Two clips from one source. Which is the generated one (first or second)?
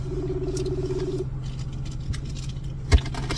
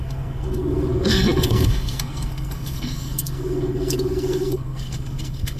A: second